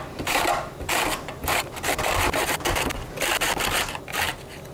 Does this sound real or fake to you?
real